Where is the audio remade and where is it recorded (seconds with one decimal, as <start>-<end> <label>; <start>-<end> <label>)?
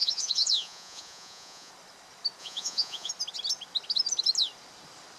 0.0-1.7 remade; 1.7-2.4 recorded; 2.4-3.1 remade; 3.1-5.2 recorded